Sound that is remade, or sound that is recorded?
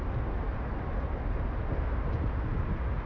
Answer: recorded